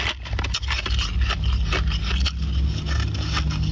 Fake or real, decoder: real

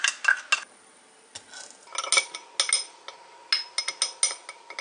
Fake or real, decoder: real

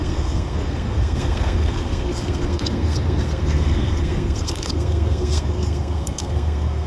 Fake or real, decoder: fake, codec, SNAC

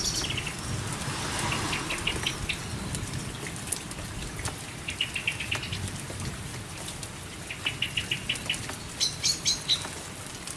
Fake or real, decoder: real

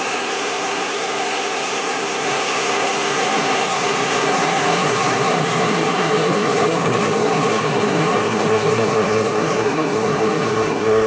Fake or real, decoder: fake, codec, SNAC